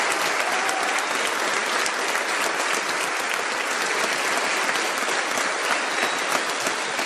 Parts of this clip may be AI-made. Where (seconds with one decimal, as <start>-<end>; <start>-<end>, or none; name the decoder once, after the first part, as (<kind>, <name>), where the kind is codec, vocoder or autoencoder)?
none